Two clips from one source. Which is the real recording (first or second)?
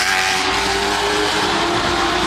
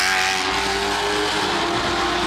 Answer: second